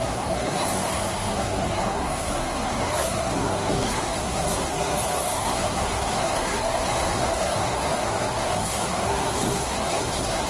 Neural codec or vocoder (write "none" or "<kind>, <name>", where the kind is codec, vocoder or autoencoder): codec, SNAC